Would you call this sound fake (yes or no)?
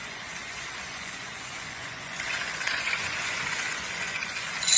yes